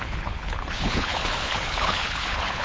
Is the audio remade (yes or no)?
yes